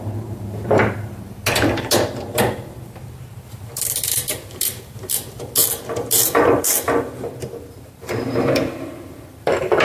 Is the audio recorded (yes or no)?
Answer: no